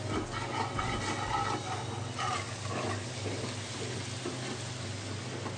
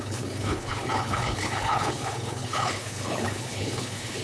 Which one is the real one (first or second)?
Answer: first